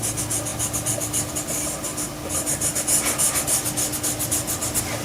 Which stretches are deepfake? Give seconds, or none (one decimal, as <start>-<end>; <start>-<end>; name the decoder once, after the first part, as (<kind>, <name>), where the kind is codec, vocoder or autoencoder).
0.5-1.3 (vocoder, BigVGAN v2)